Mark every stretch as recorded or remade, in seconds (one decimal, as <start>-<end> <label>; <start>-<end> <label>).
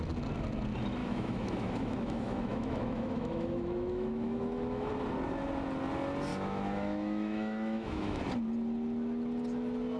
0.0-1.0 recorded; 1.0-4.9 remade; 4.9-6.3 recorded; 6.3-8.2 remade; 8.2-10.0 recorded